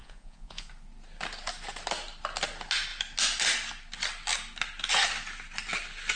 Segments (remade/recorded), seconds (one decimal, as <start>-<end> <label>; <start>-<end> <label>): 0.0-0.7 remade; 0.7-6.2 recorded